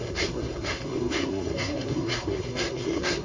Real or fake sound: fake